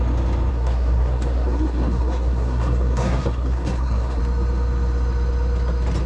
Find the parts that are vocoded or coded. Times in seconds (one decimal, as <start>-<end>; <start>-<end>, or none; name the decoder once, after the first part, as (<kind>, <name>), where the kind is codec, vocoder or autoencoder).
0.5-4.2 (codec, SNAC)